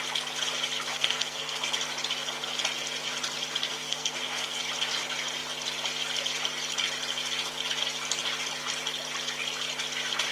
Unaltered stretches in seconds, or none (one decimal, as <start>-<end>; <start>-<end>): 0.0-0.9; 1.6-3.7; 4.6-10.3